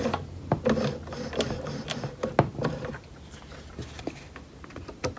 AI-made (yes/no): no